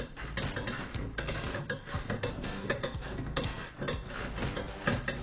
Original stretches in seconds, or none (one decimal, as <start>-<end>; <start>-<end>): 0.0-0.9; 3.7-5.2